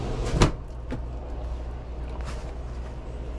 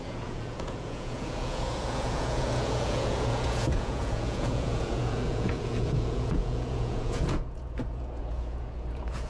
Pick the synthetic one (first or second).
second